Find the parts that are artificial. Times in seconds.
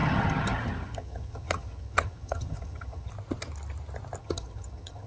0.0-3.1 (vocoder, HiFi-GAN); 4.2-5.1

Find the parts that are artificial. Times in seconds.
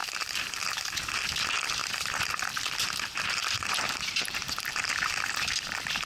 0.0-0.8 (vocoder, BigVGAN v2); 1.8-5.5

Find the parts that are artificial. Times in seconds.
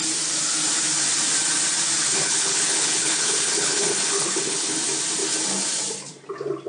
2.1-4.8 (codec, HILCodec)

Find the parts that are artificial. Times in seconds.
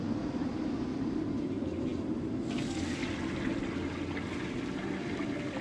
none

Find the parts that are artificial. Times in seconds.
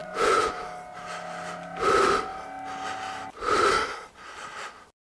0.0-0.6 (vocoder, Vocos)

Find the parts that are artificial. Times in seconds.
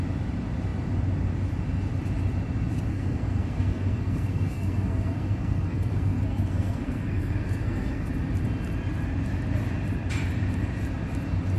2.9-8.1 (codec, SNAC)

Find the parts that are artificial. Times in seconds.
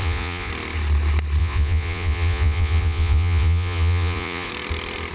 0.0-0.5 (vocoder, Vocos); 1.4-4.5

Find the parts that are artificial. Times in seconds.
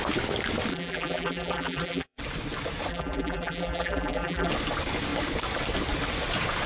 0.7-2.2 (vocoder, BigVGAN v2); 2.9-4.5